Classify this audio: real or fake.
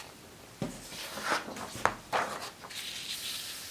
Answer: real